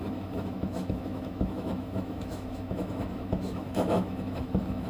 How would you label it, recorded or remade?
remade